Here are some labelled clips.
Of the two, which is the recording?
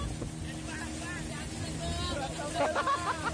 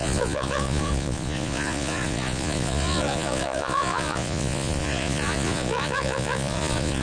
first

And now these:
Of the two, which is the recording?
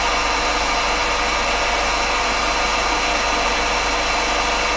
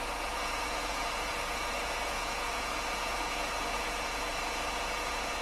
first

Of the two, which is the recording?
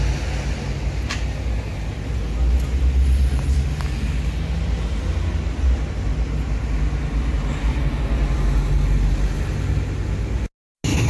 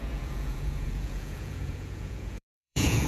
first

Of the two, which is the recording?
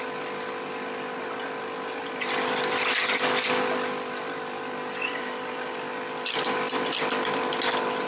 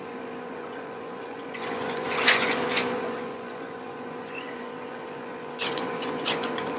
first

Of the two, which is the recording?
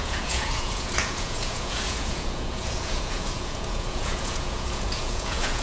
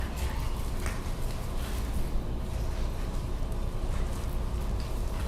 second